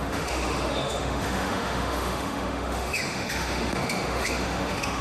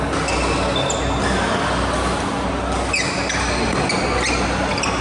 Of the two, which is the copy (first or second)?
first